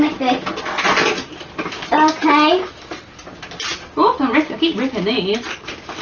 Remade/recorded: recorded